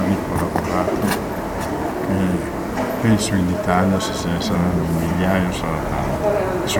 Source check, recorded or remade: recorded